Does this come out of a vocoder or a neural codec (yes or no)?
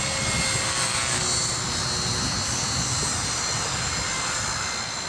no